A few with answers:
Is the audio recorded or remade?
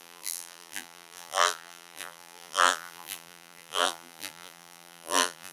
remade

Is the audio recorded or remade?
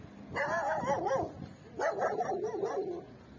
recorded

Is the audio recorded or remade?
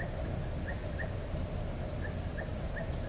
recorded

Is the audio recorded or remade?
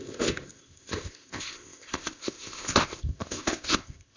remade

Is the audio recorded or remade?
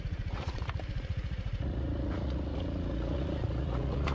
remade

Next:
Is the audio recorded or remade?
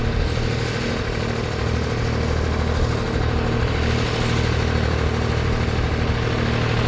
recorded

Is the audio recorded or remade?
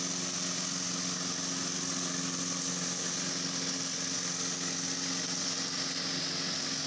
recorded